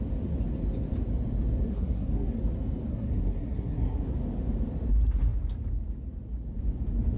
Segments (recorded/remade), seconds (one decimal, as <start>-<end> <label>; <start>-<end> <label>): 0.0-1.7 recorded; 1.7-2.4 remade; 2.4-2.9 recorded; 2.9-4.0 remade; 4.0-7.2 recorded